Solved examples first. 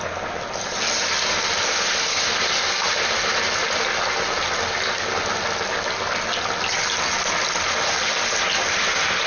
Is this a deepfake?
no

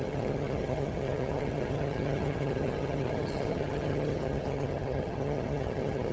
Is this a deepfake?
yes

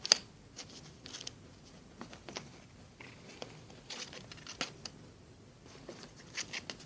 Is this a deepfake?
no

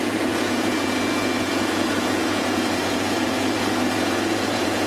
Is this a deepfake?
yes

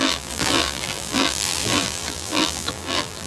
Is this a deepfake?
yes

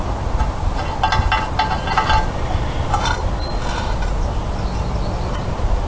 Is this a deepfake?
no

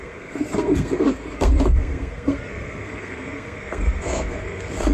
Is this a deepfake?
yes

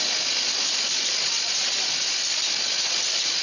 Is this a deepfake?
no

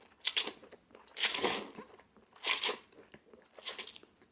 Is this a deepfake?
yes